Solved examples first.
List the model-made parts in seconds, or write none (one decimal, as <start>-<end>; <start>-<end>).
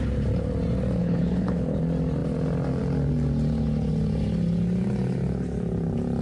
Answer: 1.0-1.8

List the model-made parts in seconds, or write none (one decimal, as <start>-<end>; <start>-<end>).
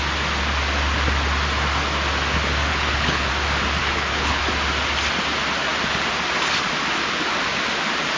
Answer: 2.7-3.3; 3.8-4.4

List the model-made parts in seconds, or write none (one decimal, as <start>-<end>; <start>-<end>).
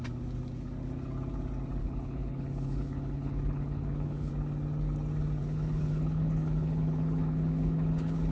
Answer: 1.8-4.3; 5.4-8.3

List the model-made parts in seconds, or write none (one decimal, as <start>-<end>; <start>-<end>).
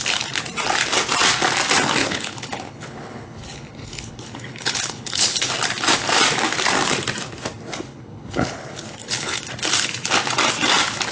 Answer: 2.0-5.5; 7.9-9.5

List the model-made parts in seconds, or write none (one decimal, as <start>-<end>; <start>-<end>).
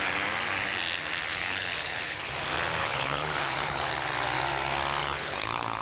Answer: 1.3-2.3; 2.8-3.9; 5.0-5.8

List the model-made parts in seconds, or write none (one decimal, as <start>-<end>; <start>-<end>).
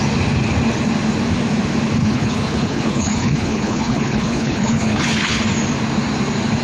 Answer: 2.0-5.4